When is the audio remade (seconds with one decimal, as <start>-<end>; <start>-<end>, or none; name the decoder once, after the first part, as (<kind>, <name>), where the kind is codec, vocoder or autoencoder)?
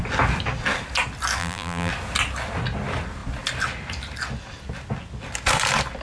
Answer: 1.4-1.9 (vocoder, BigVGAN v2)